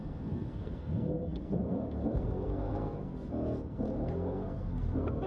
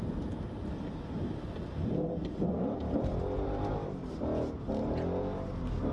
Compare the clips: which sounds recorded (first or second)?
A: second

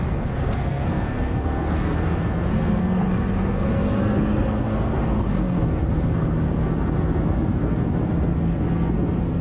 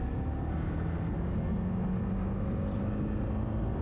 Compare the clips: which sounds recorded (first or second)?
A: second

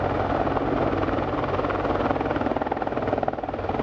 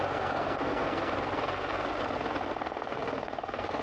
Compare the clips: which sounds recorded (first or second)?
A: first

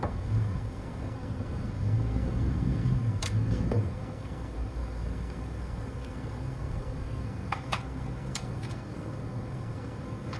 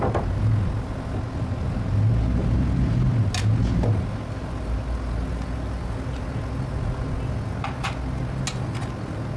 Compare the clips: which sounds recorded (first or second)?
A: second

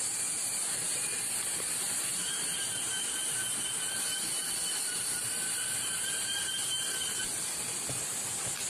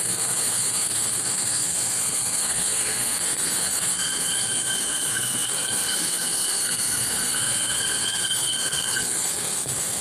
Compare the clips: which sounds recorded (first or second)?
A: first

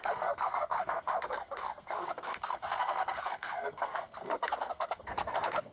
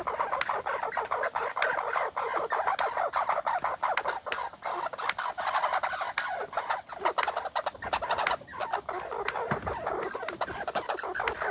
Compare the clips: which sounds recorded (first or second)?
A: second